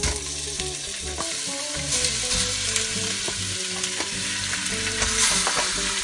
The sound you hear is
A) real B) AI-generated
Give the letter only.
A